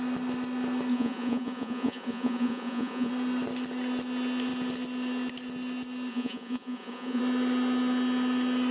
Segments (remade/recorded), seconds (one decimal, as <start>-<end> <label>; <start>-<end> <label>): 0.0-0.9 recorded; 0.9-3.1 remade; 3.1-6.1 recorded; 6.1-7.2 remade; 7.2-8.7 recorded